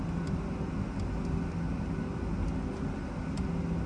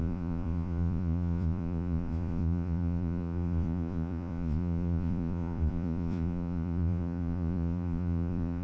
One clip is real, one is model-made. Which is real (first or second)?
first